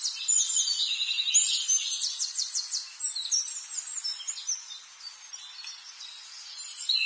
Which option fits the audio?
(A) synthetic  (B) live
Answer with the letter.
B